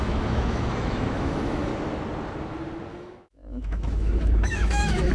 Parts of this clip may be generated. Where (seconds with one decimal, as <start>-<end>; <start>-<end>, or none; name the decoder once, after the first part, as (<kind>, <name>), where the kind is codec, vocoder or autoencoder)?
0.0-1.7 (autoencoder, DAC-VAE); 2.9-5.1